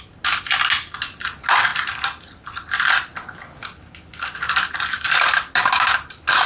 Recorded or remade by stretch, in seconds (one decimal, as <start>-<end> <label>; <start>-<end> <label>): 0.0-6.5 recorded